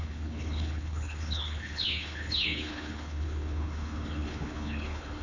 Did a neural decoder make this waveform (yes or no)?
yes